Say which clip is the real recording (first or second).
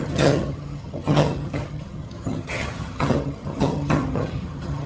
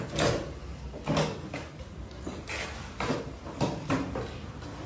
second